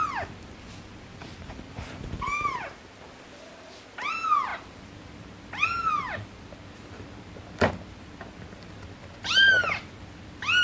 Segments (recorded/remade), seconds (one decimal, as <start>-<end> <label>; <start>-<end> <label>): 0.0-10.6 recorded